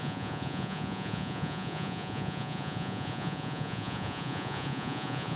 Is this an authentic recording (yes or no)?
no